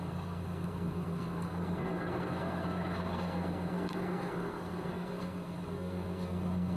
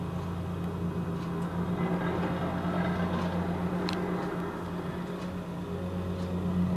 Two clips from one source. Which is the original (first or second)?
second